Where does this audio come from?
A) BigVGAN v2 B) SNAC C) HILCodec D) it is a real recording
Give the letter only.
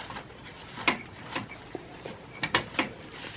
D